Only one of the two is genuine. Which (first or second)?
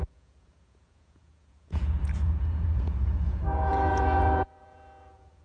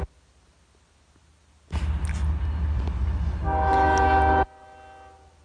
second